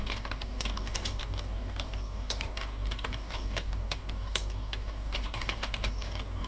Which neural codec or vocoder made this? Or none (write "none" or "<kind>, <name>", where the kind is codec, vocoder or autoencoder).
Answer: codec, DAC